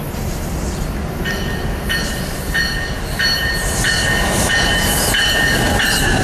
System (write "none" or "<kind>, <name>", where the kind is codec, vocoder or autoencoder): vocoder, BigVGAN v2